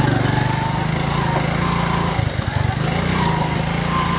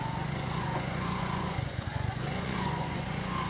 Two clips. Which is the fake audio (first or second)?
second